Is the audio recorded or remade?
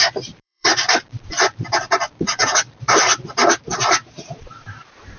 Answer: remade